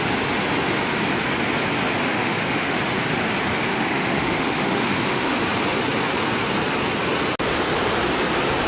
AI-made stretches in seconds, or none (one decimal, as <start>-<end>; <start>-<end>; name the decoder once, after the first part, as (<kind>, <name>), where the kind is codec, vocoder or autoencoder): 2.0-2.8 (autoencoder, DAC-VAE); 3.7-5.4